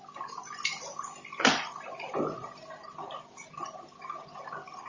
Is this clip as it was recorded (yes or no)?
yes